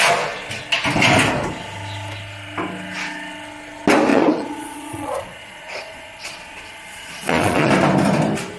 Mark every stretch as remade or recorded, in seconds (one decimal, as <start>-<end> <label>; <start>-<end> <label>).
0.0-4.1 recorded; 4.1-7.7 remade; 7.7-8.6 recorded